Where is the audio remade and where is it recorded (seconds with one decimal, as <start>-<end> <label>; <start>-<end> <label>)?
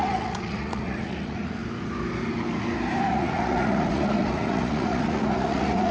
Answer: 0.0-1.6 remade; 1.6-3.1 recorded; 3.1-5.9 remade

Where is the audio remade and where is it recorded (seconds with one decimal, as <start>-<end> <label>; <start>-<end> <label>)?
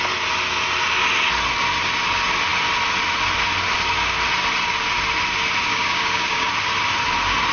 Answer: 0.0-5.7 recorded; 5.7-6.5 remade; 6.5-7.5 recorded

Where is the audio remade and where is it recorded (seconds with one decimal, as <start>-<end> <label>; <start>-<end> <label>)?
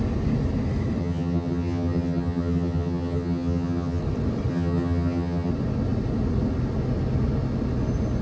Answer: 0.0-1.0 recorded; 1.0-4.0 remade; 4.0-4.5 recorded; 4.5-5.5 remade; 5.5-8.2 recorded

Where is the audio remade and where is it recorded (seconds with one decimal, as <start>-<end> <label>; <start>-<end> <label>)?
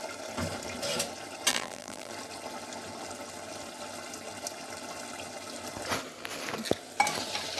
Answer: 0.0-1.5 recorded; 1.5-2.1 remade; 2.1-7.6 recorded